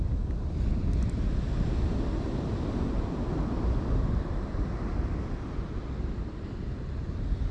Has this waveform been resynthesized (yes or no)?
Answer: no